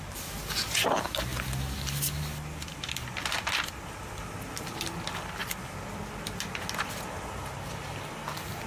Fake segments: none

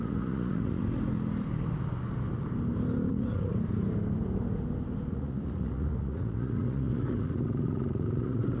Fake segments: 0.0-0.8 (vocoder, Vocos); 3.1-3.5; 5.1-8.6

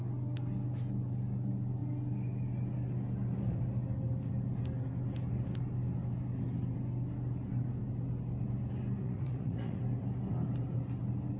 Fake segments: 9.0-9.8 (vocoder, Vocos)